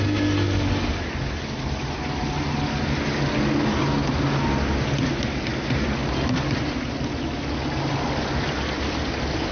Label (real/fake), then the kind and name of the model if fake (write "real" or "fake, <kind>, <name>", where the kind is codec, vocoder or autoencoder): real